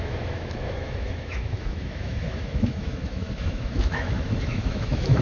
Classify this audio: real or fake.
fake